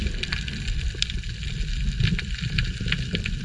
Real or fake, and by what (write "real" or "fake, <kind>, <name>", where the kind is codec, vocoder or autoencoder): real